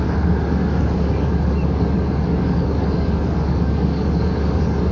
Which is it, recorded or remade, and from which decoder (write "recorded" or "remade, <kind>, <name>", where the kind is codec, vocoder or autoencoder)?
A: remade, codec, DAC